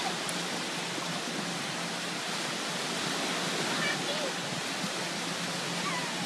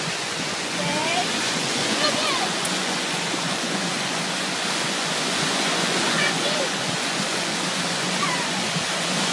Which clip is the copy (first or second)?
second